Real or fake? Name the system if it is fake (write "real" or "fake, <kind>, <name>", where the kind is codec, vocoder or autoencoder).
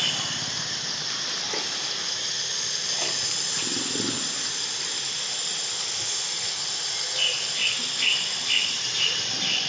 real